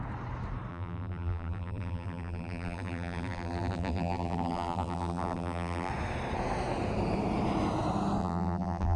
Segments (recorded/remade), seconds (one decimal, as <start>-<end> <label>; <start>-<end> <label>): 0.0-0.7 recorded; 0.7-5.9 remade; 5.9-8.2 recorded; 8.2-9.0 remade